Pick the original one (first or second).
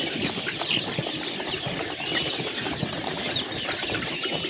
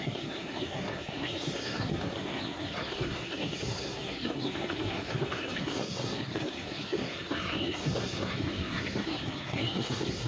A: first